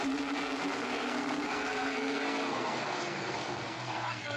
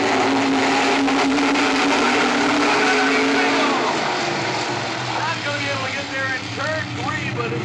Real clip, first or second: second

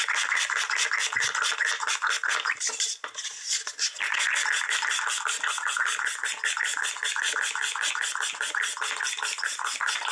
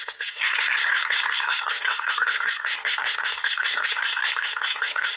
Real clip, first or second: first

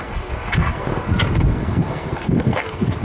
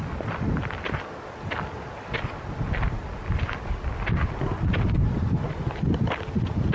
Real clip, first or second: second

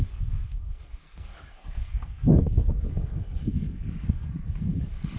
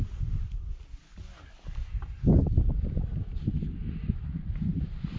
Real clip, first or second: second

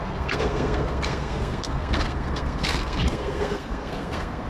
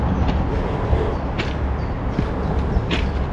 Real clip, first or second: second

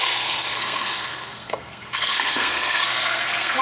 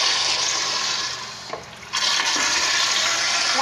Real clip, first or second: second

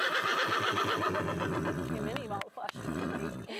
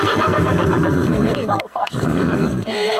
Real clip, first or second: first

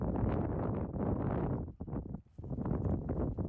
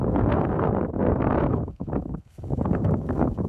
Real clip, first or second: first